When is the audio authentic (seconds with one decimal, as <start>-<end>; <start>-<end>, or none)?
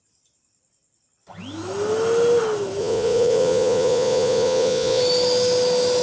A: 0.0-2.8; 5.0-6.0